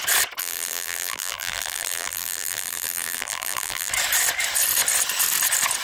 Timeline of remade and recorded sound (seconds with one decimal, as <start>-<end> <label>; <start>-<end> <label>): 0.0-0.4 recorded; 0.4-3.9 remade; 3.9-5.8 recorded